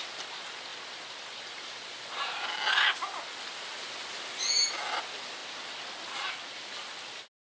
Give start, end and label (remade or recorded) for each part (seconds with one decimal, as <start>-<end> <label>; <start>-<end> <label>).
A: 0.0-7.5 recorded